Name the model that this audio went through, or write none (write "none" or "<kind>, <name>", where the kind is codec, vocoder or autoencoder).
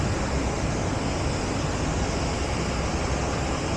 none